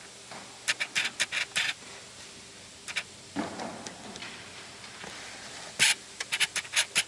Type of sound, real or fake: real